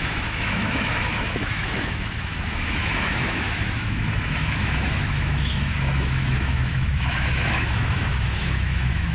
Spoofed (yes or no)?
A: yes